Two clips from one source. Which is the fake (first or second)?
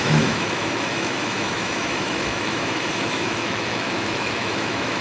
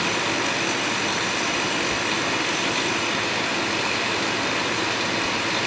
first